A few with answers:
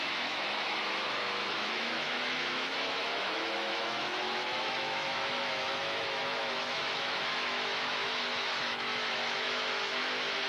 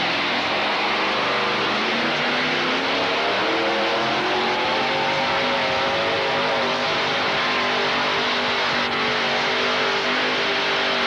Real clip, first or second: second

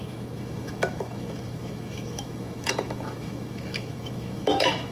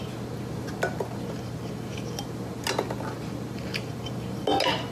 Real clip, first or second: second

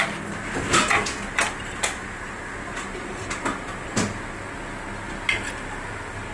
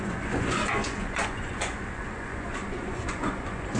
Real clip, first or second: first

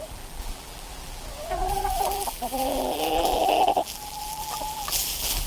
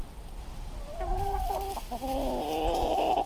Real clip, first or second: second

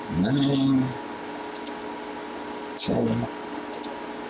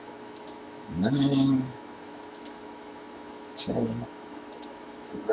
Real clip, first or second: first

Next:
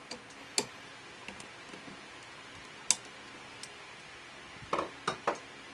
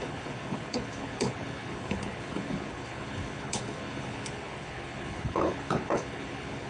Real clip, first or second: first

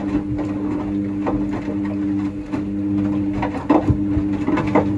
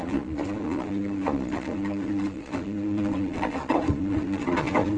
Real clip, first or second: first